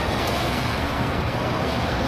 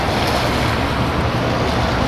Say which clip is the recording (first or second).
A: second